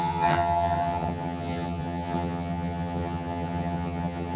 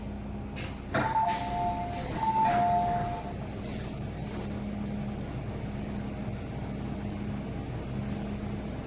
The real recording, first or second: second